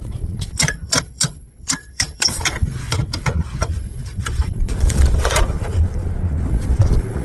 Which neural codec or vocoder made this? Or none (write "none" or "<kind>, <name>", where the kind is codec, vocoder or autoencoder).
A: vocoder, Vocos